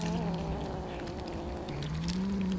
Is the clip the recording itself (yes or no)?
yes